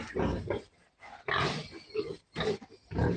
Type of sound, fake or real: real